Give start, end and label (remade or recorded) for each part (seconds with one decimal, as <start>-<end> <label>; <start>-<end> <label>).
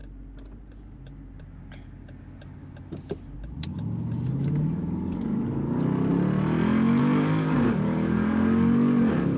0.0-4.3 recorded; 4.3-6.1 remade; 6.1-7.0 recorded; 7.0-9.4 remade